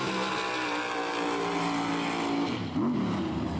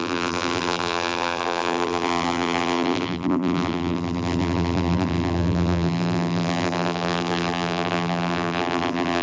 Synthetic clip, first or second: second